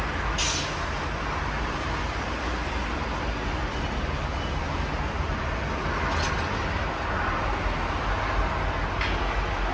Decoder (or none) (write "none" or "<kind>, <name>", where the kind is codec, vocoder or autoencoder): none